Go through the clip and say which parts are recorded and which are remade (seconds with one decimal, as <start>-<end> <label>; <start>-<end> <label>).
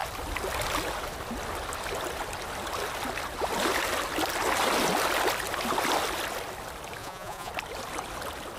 0.0-7.0 recorded; 7.0-7.5 remade; 7.5-8.6 recorded